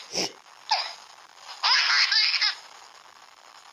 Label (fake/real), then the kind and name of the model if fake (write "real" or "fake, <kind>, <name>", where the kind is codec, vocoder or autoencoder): real